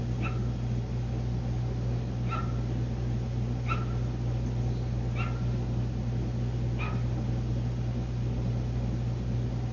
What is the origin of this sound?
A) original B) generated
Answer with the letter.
A